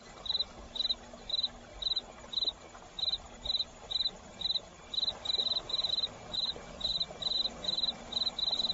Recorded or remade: recorded